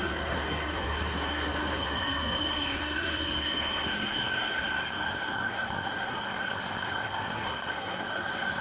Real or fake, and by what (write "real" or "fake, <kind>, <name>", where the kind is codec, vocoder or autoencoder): fake, codec, SNAC